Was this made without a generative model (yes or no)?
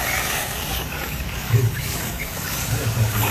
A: no